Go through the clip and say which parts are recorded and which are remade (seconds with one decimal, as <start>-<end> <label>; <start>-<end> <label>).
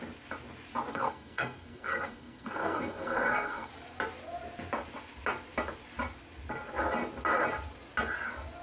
0.0-0.9 recorded; 0.9-3.7 remade; 3.7-8.6 recorded